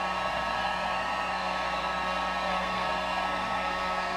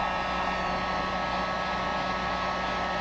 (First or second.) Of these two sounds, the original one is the second